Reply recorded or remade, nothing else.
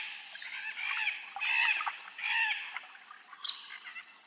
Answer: remade